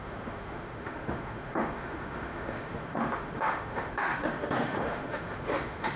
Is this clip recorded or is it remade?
remade